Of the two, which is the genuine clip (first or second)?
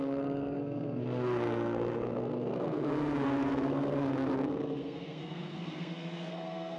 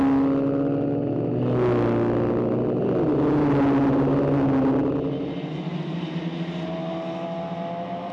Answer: second